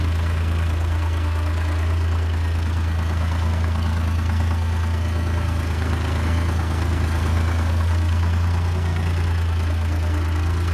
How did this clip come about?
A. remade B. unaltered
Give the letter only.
A